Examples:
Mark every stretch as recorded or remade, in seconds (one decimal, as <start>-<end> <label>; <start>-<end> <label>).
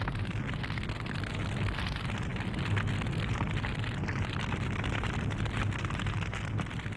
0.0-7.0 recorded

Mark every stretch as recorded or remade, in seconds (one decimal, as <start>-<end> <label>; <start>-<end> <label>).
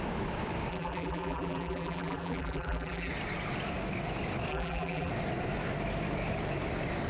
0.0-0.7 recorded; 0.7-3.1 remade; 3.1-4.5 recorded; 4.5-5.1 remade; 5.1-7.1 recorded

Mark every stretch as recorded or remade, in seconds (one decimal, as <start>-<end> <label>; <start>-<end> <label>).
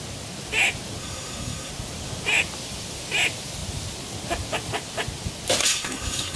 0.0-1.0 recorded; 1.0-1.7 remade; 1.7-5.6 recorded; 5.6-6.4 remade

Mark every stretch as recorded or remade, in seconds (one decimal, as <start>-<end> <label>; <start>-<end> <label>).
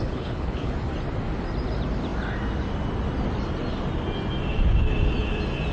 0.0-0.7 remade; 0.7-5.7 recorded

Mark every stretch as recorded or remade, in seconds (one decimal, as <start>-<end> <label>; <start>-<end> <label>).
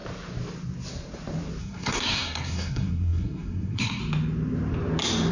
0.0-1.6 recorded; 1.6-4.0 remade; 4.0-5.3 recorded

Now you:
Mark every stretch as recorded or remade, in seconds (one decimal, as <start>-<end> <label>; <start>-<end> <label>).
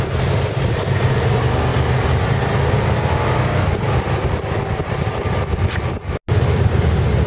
0.0-7.3 recorded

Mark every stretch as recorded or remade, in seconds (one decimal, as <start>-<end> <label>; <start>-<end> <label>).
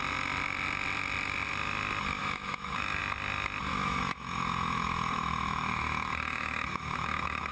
0.0-2.2 recorded; 2.2-3.0 remade; 3.0-3.7 recorded; 3.7-7.5 remade